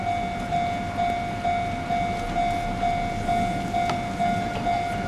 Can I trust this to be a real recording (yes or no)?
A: yes